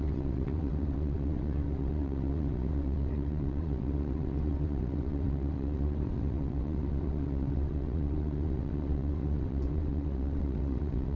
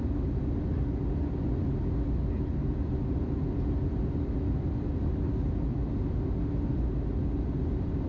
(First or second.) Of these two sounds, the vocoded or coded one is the first